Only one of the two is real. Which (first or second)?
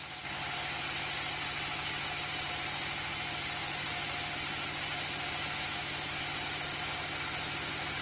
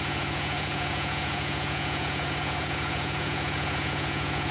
first